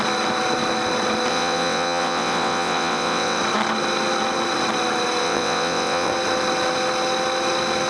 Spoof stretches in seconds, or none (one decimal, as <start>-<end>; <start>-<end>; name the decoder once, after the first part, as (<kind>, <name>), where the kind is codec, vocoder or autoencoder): 1.3-3.4 (vocoder, WaveNeXt); 5.2-6.1

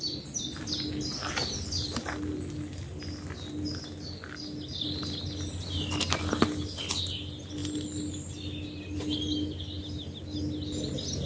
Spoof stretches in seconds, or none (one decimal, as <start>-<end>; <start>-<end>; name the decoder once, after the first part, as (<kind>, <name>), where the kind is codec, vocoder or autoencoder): none

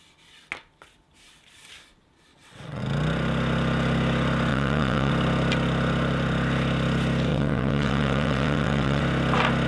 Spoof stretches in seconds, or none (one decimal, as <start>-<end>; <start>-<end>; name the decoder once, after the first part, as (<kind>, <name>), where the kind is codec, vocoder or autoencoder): 2.3-2.8 (vocoder, WaveNeXt); 4.5-5.1; 7.3-9.0

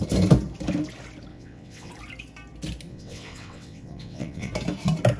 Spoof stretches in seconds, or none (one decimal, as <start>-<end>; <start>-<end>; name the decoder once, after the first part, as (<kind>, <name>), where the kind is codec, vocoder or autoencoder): 1.3-1.9 (vocoder, WaveNeXt); 2.9-4.5

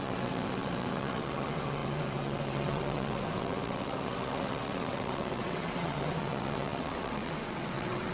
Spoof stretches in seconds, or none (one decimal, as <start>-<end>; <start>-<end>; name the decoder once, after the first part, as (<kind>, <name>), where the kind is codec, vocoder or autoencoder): 0.0-8.1 (vocoder, WaveNeXt)

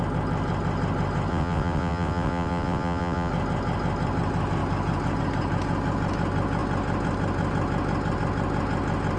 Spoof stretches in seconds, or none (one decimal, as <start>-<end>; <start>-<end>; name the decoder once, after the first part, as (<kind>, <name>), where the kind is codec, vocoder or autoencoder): 1.3-3.3 (vocoder, WaveNeXt)